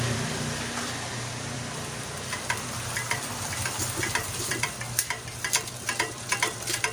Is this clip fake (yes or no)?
yes